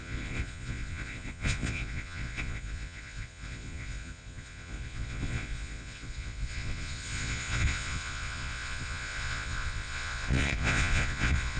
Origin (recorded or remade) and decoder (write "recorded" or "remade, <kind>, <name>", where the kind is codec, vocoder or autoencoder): remade, vocoder, Vocos